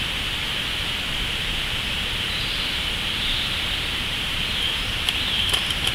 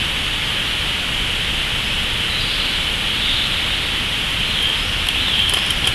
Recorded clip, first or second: second